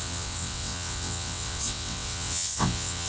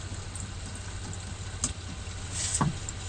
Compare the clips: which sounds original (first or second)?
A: second